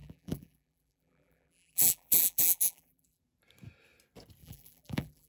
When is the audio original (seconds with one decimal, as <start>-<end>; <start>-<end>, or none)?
3.2-4.4